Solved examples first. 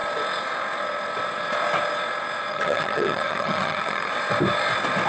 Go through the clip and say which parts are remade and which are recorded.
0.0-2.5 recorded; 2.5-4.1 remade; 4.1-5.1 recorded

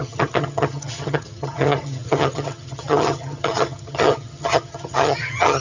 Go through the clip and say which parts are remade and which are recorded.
0.0-5.6 remade

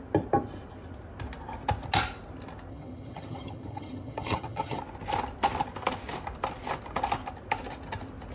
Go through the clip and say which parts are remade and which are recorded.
0.0-2.7 recorded; 2.7-4.8 remade; 4.8-8.3 recorded

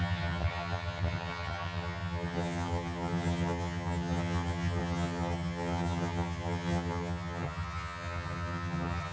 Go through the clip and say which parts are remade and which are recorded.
0.0-9.1 remade

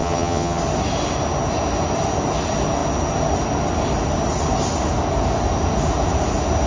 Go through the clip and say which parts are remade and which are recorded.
0.0-0.6 remade; 0.6-6.7 recorded

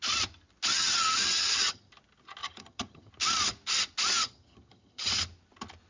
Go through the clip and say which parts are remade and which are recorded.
0.0-0.7 recorded; 0.7-1.9 remade; 1.9-2.4 recorded; 2.4-3.1 remade; 3.1-4.2 recorded; 4.2-5.1 remade; 5.1-5.9 recorded

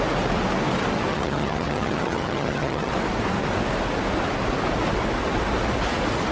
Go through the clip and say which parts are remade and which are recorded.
0.0-1.1 recorded; 1.1-2.9 remade; 2.9-6.3 recorded

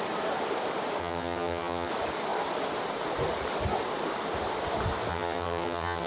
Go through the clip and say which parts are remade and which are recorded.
0.0-1.0 recorded; 1.0-1.9 remade; 1.9-5.1 recorded; 5.1-6.1 remade